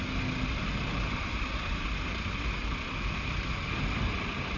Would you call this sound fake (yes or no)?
no